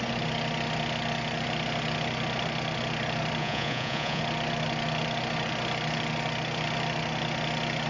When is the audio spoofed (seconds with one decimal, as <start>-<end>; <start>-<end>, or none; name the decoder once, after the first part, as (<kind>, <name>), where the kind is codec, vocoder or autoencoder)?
3.4-4.2 (vocoder, Vocos)